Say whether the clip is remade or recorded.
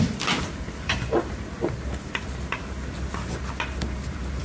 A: recorded